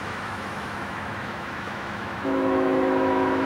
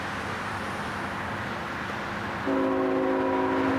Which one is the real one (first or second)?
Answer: second